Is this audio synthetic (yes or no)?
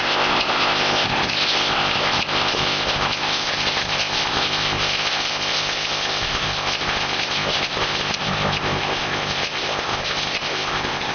yes